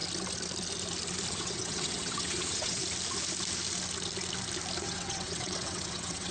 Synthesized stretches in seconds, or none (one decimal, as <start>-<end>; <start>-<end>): 1.3-2.8; 4.8-6.3